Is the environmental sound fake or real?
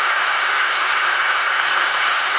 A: fake